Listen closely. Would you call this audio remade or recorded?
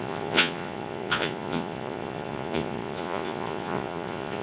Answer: remade